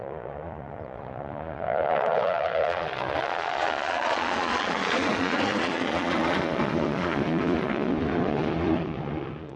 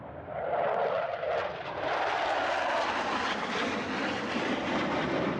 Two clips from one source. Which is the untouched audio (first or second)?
second